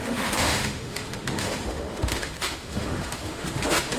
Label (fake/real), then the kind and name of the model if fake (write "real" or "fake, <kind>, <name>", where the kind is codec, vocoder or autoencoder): fake, autoencoder, DAC-VAE